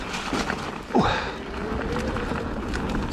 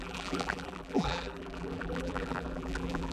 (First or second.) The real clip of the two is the first